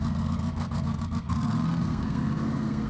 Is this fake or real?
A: fake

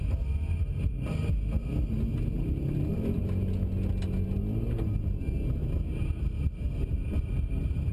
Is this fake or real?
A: real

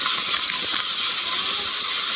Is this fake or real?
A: real